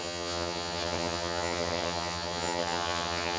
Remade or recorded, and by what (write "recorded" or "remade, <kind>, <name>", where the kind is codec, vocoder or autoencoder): remade, vocoder, HiFi-GAN